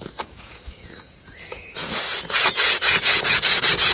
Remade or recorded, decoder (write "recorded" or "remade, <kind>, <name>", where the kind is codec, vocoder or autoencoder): remade, vocoder, Vocos